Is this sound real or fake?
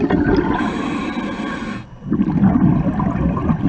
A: real